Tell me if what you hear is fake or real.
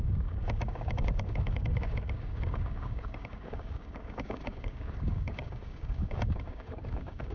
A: fake